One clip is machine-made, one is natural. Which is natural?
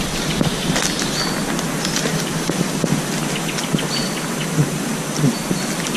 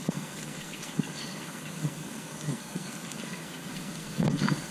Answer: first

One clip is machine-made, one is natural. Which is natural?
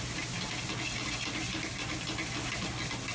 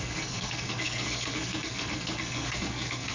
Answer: first